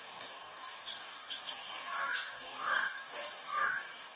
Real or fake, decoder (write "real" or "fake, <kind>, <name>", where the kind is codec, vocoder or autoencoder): fake, codec, DAC